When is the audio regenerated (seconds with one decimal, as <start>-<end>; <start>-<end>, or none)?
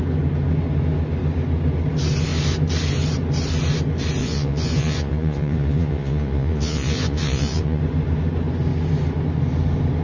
4.2-7.8